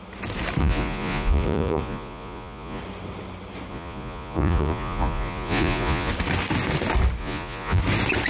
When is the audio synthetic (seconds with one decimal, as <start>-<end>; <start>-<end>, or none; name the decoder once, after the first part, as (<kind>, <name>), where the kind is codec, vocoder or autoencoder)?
0.6-2.8 (vocoder, Vocos); 3.7-6.1; 7.2-7.8